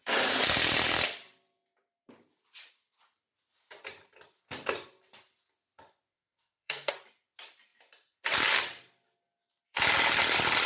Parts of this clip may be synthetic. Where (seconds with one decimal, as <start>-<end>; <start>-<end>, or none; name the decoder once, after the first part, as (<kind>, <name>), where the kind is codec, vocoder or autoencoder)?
6.1-6.9 (codec, SNAC)